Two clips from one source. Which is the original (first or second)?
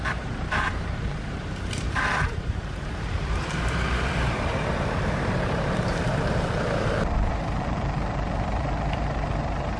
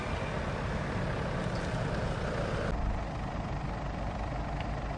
second